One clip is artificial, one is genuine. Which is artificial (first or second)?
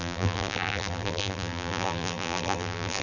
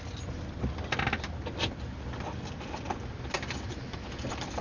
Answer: first